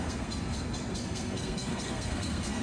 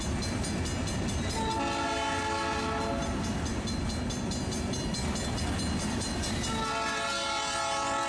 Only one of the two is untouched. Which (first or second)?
second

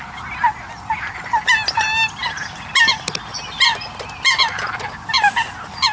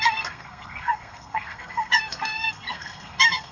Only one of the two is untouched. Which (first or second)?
first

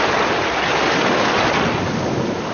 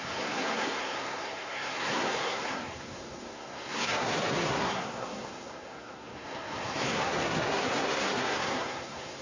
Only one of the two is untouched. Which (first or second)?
first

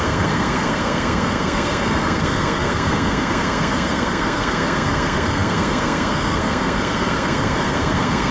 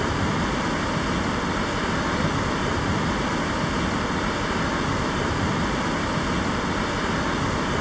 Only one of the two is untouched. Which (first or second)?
second